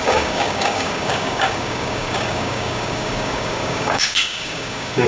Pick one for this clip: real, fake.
fake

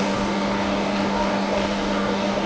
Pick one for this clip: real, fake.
fake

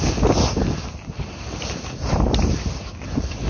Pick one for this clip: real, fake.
real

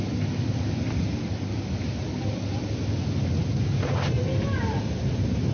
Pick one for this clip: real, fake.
real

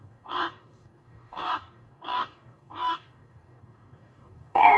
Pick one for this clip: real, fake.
fake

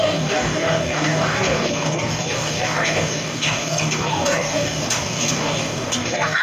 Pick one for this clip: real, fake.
fake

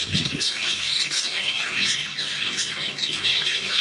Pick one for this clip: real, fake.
fake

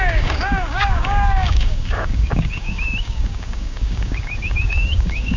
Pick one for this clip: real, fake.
fake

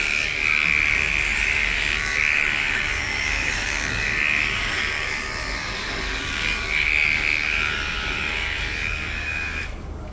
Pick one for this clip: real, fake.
fake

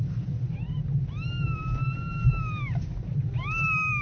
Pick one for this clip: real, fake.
real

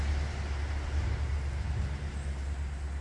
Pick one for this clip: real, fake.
real